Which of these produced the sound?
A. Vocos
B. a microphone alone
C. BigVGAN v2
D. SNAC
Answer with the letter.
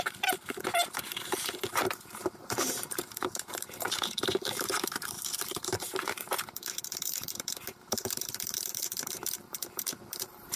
C